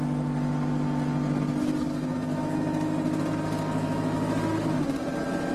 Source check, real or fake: real